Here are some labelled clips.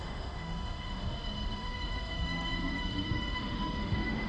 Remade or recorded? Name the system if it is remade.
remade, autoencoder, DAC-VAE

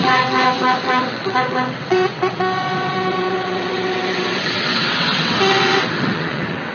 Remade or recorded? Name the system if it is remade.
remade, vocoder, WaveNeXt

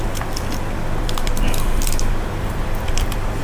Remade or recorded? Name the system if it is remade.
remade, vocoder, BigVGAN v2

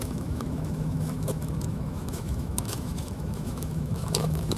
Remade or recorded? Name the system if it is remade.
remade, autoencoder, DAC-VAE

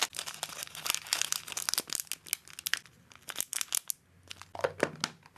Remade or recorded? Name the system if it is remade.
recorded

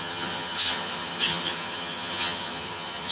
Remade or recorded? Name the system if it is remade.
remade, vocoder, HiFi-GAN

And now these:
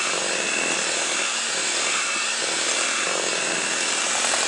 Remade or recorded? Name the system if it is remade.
recorded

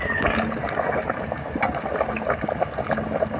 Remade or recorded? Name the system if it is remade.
recorded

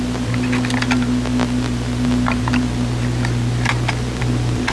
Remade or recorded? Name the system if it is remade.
recorded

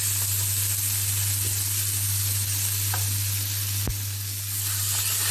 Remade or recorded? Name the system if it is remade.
recorded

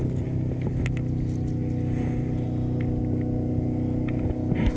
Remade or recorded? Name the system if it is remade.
recorded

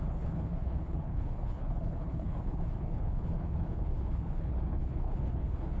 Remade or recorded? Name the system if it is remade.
remade, codec, HILCodec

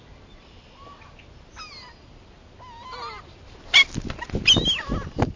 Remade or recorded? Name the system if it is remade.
recorded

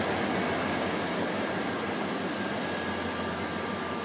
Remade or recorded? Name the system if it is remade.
recorded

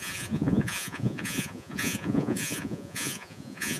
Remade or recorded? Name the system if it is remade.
remade, vocoder, Vocos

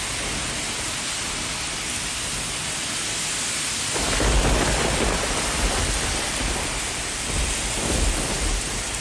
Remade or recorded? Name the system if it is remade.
recorded